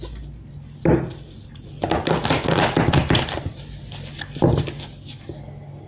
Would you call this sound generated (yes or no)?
no